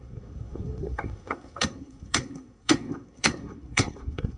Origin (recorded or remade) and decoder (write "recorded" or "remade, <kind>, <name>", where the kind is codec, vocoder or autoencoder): remade, codec, SNAC